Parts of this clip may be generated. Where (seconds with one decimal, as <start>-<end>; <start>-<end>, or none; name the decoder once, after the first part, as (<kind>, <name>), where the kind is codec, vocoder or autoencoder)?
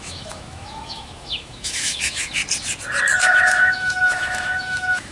0.0-2.4 (autoencoder, DAC-VAE); 3.2-5.1